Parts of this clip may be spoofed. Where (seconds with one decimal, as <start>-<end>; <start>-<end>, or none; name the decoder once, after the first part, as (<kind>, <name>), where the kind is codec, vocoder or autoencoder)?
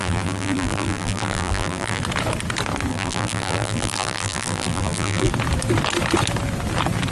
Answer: 0.0-2.0 (vocoder, BigVGAN v2); 2.9-5.3